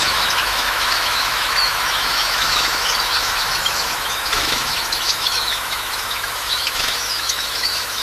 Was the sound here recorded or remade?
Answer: remade